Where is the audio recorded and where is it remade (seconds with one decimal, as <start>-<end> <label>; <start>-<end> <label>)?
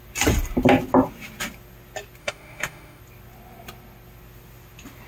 0.0-2.2 recorded; 2.2-3.0 remade; 3.0-5.1 recorded